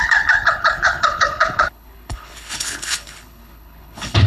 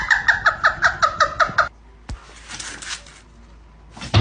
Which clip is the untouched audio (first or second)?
second